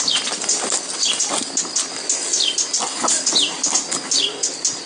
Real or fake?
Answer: real